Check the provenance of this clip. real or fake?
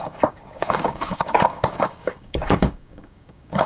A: fake